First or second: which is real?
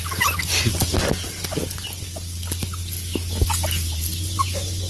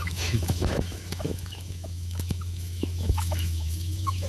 first